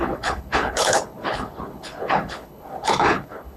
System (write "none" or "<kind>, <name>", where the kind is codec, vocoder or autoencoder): codec, HILCodec